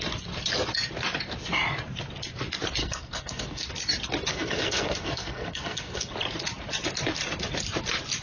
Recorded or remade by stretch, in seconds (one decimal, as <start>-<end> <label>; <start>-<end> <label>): 0.0-2.8 recorded; 2.8-3.7 remade; 3.7-4.3 recorded; 4.3-6.1 remade; 6.1-8.2 recorded